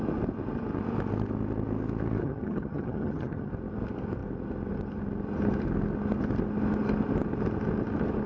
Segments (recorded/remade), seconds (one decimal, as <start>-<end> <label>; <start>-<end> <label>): 0.0-2.2 recorded; 2.2-3.5 remade; 3.5-8.3 recorded